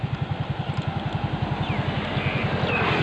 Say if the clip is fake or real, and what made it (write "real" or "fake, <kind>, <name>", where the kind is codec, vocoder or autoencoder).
real